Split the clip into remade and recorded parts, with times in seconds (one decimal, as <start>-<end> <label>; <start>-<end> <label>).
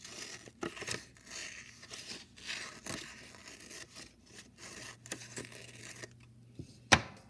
0.0-7.3 recorded